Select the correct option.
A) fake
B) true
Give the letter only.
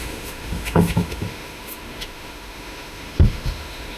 A